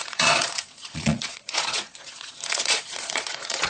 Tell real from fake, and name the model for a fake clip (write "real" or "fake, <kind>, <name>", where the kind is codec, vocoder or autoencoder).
fake, vocoder, Vocos